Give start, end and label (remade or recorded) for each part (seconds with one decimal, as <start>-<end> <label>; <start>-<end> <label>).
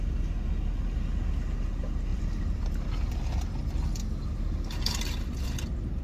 0.0-2.1 recorded; 2.1-3.2 remade; 3.2-6.0 recorded